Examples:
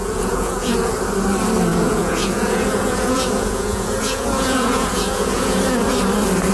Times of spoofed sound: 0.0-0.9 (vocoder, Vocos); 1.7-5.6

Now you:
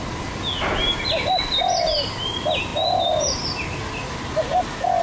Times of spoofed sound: none